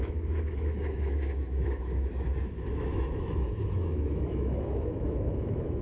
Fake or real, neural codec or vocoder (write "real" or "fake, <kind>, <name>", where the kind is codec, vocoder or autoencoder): fake, autoencoder, DAC-VAE